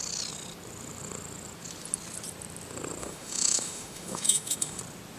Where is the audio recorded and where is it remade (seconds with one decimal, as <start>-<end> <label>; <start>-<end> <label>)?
0.0-3.0 recorded; 3.0-4.8 remade; 4.8-5.2 recorded